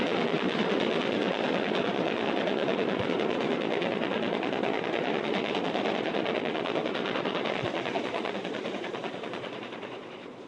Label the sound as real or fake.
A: fake